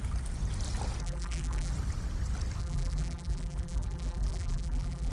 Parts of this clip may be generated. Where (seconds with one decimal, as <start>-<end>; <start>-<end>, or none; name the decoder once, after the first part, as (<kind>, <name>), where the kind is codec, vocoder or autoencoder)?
1.0-1.7 (vocoder, BigVGAN v2); 2.6-5.1